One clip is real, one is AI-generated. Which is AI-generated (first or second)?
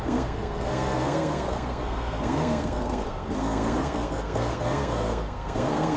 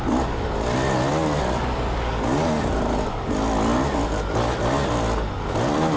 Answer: first